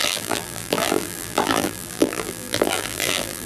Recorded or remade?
remade